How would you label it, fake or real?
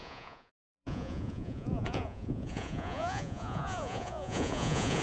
fake